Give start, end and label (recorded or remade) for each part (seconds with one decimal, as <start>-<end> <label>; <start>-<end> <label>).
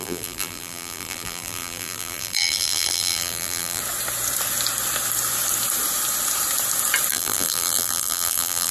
0.0-3.8 remade; 3.8-7.1 recorded; 7.1-8.7 remade